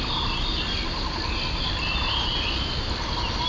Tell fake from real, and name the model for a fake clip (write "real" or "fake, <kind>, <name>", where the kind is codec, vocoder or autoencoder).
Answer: real